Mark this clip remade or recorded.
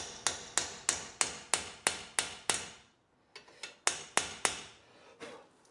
recorded